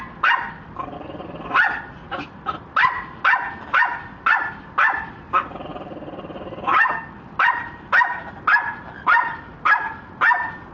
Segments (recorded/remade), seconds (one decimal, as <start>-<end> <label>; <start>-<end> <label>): 0.0-10.7 recorded